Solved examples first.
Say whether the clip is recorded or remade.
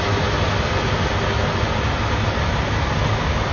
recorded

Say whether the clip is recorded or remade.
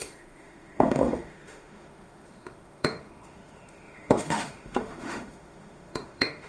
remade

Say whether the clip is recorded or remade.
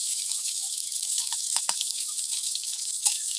remade